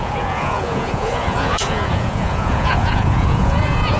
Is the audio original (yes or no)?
no